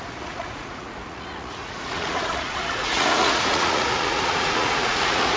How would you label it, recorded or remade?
remade